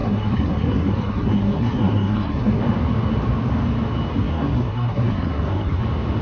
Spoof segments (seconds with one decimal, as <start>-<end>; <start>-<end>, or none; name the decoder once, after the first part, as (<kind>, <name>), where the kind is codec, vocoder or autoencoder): 0.0-2.6 (codec, SNAC); 4.1-5.8